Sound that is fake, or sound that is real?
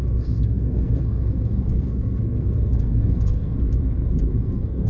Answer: fake